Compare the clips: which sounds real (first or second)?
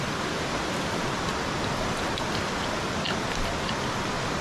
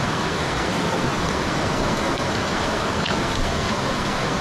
first